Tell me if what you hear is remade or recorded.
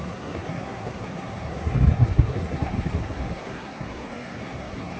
remade